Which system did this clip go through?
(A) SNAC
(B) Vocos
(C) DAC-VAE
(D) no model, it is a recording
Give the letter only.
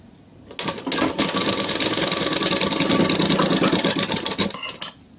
D